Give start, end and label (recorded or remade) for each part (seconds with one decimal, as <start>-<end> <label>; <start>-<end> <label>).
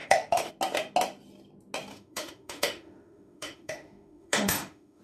0.0-0.5 remade; 0.5-1.9 recorded; 1.9-5.0 remade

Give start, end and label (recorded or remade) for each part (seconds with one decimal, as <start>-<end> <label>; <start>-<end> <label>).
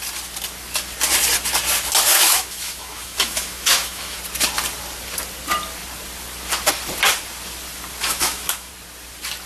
0.0-2.1 recorded; 2.1-4.2 remade; 4.2-8.0 recorded; 8.0-8.7 remade; 8.7-9.5 recorded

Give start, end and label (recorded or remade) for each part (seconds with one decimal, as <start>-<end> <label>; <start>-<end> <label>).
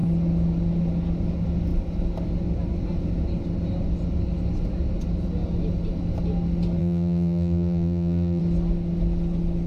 0.0-6.8 recorded; 6.8-8.4 remade; 8.4-9.7 recorded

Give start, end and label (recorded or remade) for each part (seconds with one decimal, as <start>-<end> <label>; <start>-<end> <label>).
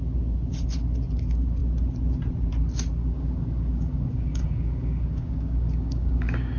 0.0-3.0 recorded; 3.0-6.6 remade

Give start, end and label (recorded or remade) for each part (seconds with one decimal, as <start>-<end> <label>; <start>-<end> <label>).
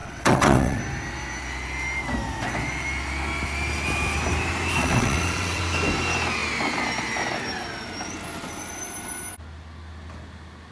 0.0-0.8 remade; 0.8-4.8 recorded; 4.8-5.6 remade; 5.6-10.7 recorded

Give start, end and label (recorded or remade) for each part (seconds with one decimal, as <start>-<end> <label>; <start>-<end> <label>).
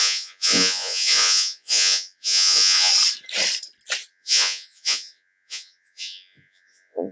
0.0-2.9 remade; 2.9-4.1 recorded; 4.1-7.1 remade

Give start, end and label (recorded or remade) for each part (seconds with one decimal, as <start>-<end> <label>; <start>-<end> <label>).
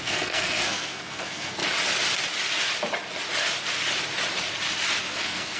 0.0-1.6 remade; 1.6-5.0 recorded; 5.0-5.6 remade